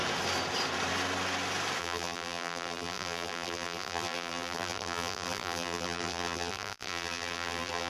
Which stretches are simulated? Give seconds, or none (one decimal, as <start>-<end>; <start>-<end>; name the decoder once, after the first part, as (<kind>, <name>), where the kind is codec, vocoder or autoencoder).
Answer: 1.8-7.9 (vocoder, BigVGAN v2)